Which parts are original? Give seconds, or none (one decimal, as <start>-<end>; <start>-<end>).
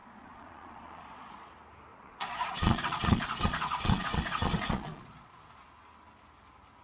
1.5-1.9; 5.4-6.8